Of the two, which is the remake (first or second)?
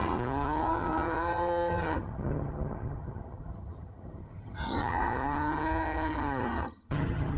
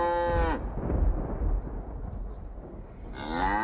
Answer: first